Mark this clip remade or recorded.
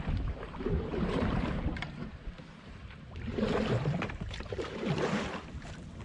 remade